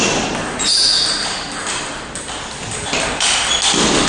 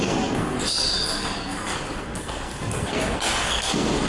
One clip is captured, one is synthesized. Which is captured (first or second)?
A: first